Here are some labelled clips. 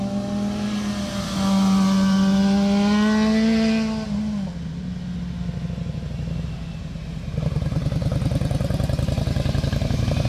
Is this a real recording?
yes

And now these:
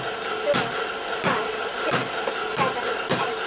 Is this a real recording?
yes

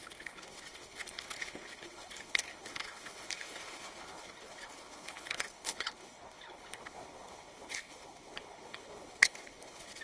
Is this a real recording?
no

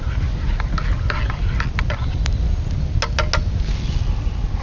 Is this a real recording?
yes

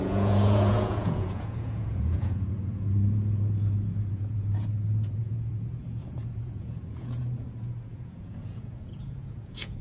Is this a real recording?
no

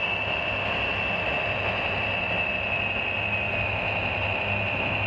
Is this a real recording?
yes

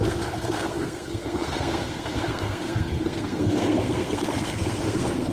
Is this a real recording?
no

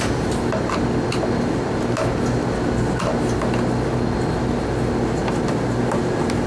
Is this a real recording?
yes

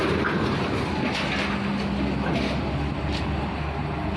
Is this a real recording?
yes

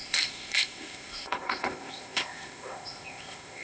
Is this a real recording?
no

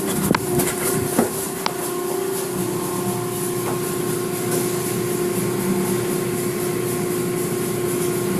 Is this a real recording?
yes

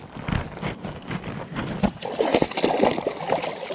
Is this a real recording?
yes